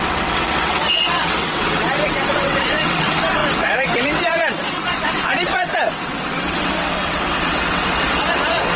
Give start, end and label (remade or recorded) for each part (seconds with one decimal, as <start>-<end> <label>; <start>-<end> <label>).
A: 0.0-8.8 remade